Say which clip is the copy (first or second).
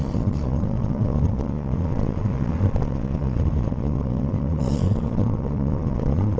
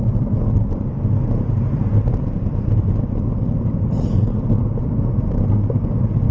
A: first